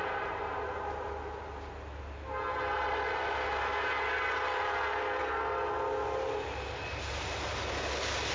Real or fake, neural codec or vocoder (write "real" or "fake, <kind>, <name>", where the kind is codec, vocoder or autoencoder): real